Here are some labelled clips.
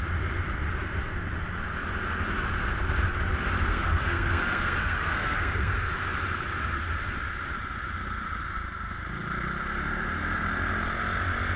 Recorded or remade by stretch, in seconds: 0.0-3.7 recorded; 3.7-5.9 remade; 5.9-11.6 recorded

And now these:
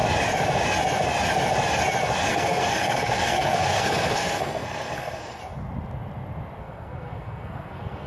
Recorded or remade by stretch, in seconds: 0.0-2.3 recorded; 2.3-5.4 remade; 5.4-6.6 recorded; 6.6-8.1 remade

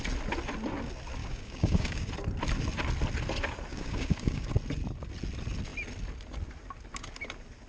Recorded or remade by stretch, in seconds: 0.0-1.2 recorded; 1.2-2.1 remade; 2.1-3.7 recorded; 3.7-4.5 remade; 4.5-7.7 recorded

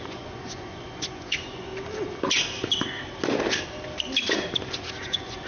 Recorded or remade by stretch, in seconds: 0.0-1.7 remade; 1.7-5.0 recorded; 5.0-5.5 remade

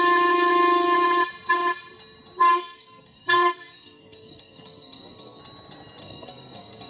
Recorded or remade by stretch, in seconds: 0.0-2.5 recorded; 2.5-5.4 remade; 5.4-6.0 recorded; 6.0-6.9 remade

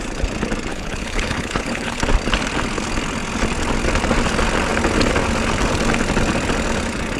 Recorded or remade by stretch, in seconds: 0.0-0.7 recorded; 0.7-2.0 remade; 2.0-7.2 recorded

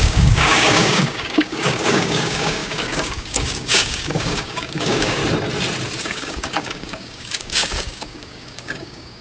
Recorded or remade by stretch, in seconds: 0.0-5.2 remade; 5.2-6.0 recorded; 6.0-9.2 remade

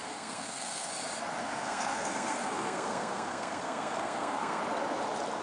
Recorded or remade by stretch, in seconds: 0.0-0.9 remade; 0.9-1.4 recorded; 1.4-4.6 remade; 4.6-5.4 recorded